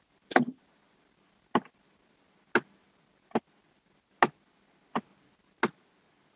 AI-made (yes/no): no